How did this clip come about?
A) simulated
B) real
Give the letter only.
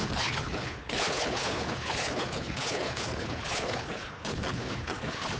A